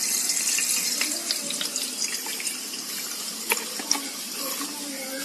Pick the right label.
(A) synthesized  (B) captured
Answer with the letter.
A